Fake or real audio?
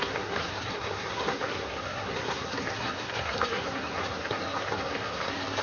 fake